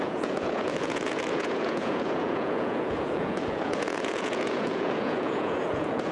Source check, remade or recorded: remade